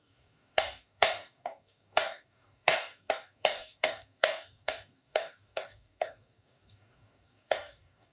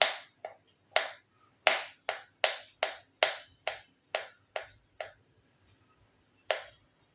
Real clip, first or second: second